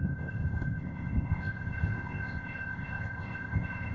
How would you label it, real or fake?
fake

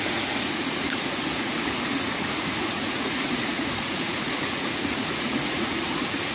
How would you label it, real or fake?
fake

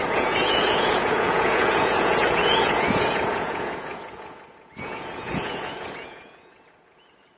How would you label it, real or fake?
fake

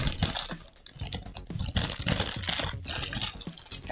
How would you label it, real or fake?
real